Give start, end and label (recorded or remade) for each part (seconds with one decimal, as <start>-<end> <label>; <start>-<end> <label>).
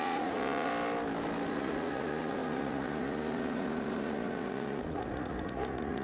0.0-0.7 remade; 0.7-1.5 recorded; 1.5-6.0 remade